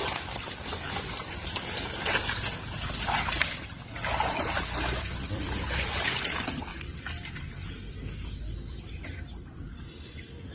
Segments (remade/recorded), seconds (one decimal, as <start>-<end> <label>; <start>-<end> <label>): 0.0-5.0 recorded; 5.0-10.5 remade